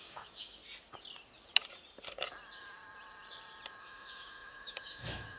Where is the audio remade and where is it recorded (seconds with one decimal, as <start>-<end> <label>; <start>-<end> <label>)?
0.0-0.6 remade; 0.6-3.8 recorded; 3.8-5.4 remade